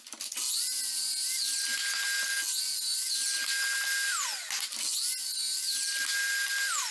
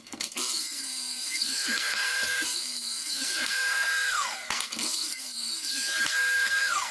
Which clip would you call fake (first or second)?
second